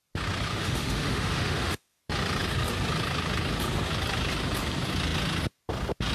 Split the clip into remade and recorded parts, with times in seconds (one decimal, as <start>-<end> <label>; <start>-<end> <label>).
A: 0.0-0.5 recorded; 0.5-2.0 remade; 2.0-6.1 recorded